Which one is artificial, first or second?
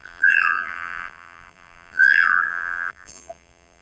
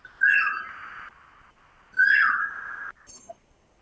first